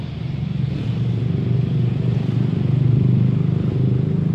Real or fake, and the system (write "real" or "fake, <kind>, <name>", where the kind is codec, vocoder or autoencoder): fake, vocoder, BigVGAN v2